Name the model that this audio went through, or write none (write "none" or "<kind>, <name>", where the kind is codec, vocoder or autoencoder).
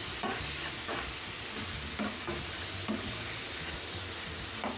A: none